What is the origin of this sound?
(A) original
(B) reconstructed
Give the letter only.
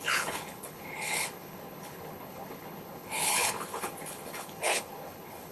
B